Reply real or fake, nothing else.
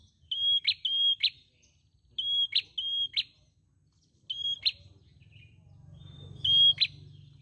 real